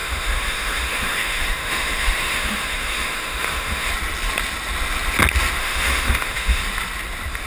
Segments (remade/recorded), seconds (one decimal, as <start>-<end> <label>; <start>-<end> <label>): 0.0-3.9 remade; 3.9-5.6 recorded; 5.6-6.6 remade; 6.6-7.5 recorded